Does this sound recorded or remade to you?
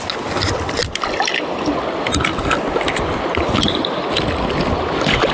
recorded